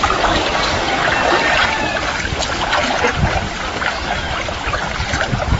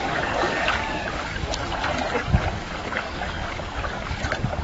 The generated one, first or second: second